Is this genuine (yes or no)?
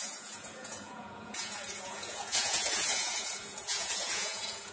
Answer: no